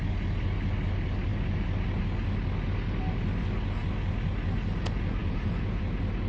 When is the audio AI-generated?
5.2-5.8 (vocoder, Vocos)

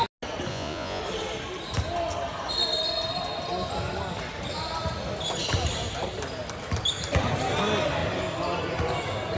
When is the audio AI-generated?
0.5-1.0 (vocoder, Vocos)

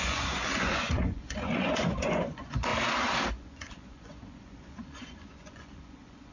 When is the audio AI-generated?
0.0-2.7 (vocoder, Vocos); 3.3-6.3

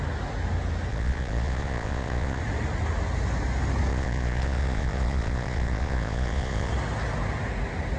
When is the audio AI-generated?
0.9-2.4 (vocoder, Vocos); 3.9-6.7

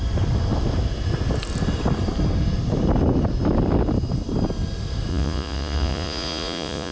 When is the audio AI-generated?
5.1-6.9 (vocoder, Vocos)

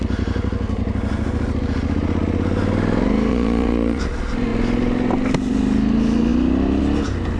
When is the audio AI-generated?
3.3-4.0 (vocoder, Vocos)

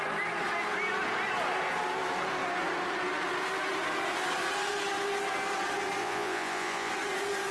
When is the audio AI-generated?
6.0-6.9 (vocoder, Vocos)

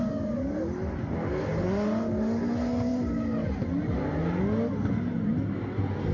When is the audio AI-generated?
none